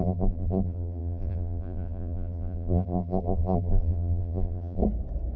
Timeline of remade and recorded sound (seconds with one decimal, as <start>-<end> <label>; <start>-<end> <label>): 0.0-4.8 remade; 4.8-5.4 recorded